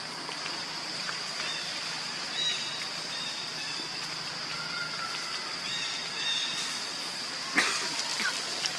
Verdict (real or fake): real